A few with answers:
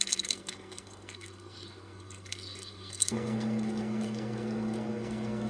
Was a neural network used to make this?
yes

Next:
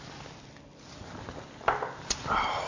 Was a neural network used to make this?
no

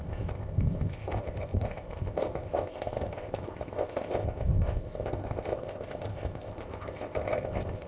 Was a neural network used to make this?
yes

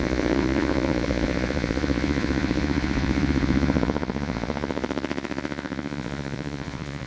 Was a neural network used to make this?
yes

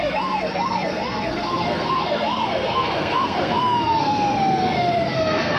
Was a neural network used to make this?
yes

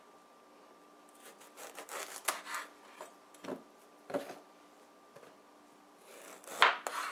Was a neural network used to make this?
no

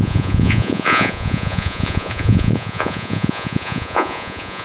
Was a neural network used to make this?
yes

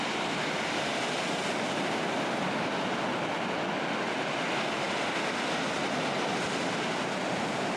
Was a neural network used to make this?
no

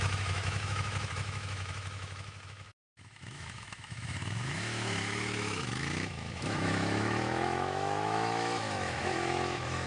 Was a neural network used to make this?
yes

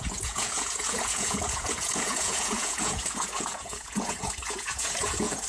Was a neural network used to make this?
yes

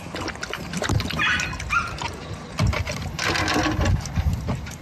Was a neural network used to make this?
no